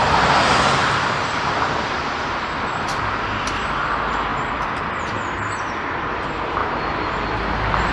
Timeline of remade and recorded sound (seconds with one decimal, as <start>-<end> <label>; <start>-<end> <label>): 0.0-0.8 recorded; 0.8-3.0 remade; 3.0-4.3 recorded; 4.3-4.9 remade; 4.9-6.6 recorded; 6.6-7.9 remade